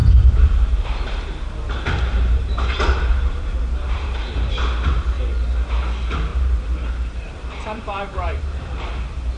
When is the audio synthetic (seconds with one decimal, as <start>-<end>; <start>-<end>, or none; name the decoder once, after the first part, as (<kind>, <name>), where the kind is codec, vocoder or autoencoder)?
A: 0.0-1.4 (vocoder, BigVGAN v2); 2.1-4.6; 6.3-8.9